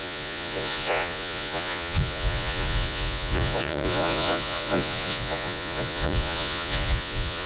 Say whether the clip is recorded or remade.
remade